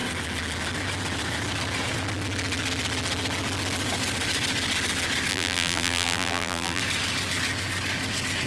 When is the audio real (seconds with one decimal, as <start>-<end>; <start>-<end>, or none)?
0.0-5.3; 6.8-8.5